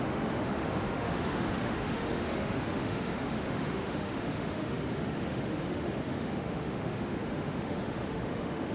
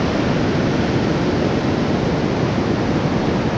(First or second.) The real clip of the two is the second